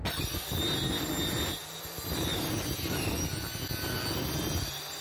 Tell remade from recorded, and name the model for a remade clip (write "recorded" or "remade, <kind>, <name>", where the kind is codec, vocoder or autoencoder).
recorded